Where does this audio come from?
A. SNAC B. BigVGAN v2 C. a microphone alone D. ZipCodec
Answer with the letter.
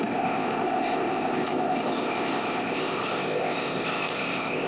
D